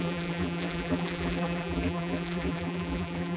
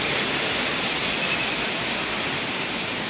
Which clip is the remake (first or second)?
first